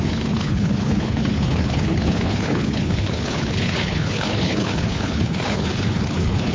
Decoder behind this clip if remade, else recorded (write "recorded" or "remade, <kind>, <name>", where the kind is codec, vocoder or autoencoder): remade, codec, HILCodec